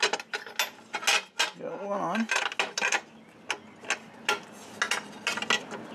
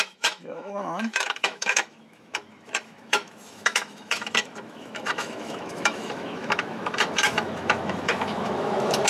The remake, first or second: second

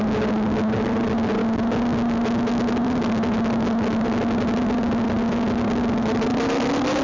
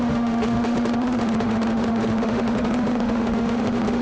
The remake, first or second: second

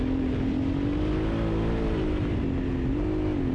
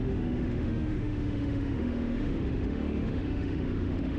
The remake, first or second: second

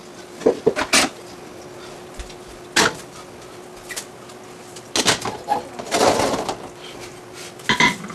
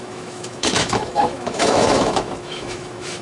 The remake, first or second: second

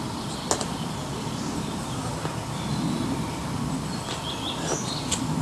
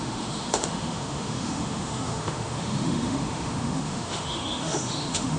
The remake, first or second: second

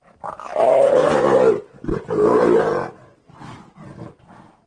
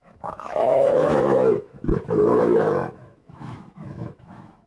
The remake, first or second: second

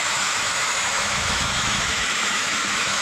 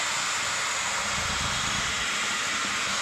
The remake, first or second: first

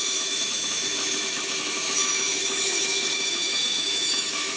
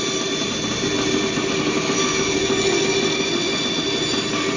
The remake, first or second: first